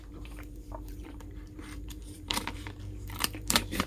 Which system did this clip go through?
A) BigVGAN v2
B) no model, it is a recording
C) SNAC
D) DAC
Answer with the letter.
A